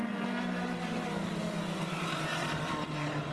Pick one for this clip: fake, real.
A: fake